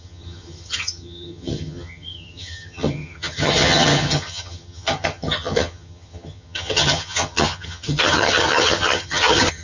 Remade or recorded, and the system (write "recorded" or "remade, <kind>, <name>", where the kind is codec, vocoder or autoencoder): remade, vocoder, HiFi-GAN